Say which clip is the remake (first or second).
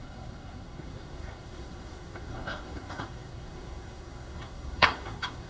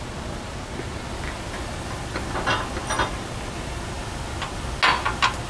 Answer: first